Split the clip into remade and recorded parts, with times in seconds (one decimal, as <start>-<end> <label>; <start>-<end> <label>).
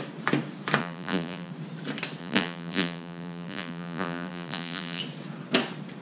0.0-0.8 recorded; 0.8-1.5 remade; 1.5-2.2 recorded; 2.2-5.0 remade; 5.0-6.0 recorded